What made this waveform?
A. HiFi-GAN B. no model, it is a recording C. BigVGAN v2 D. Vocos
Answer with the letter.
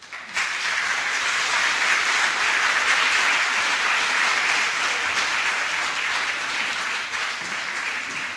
B